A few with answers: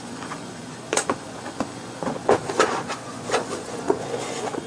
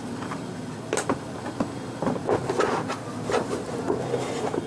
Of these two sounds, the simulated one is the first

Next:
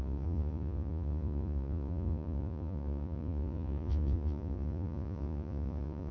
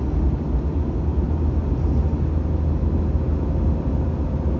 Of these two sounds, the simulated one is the first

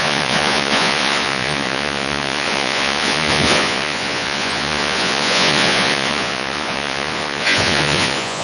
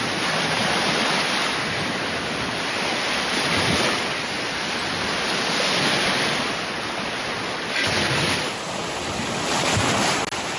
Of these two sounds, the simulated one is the first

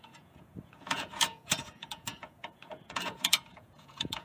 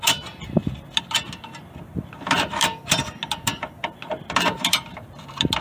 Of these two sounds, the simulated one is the first